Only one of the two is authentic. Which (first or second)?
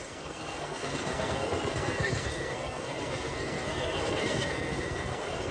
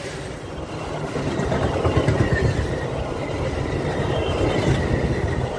second